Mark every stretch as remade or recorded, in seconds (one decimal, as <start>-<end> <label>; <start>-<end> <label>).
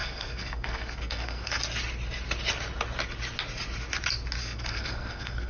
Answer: 0.0-1.6 remade; 1.6-4.4 recorded; 4.4-5.5 remade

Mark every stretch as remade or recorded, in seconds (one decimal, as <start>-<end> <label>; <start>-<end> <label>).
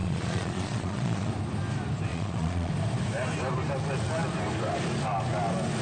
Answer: 0.0-1.3 remade; 1.3-2.1 recorded; 2.1-2.7 remade; 2.7-5.8 recorded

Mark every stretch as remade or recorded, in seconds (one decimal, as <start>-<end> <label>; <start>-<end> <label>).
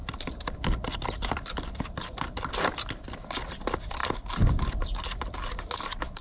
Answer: 0.0-6.2 recorded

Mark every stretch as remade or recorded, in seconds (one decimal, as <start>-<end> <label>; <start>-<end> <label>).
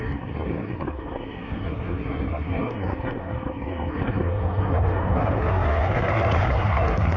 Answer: 0.0-7.2 remade